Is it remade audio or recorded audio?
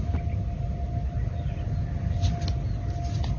recorded